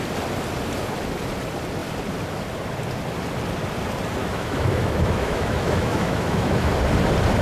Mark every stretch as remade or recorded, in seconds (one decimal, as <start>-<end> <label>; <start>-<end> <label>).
0.0-4.2 recorded; 4.2-6.7 remade; 6.7-7.4 recorded